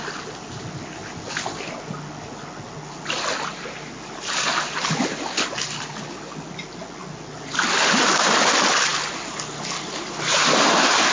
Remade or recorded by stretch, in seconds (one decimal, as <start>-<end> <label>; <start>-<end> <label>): 0.0-11.1 recorded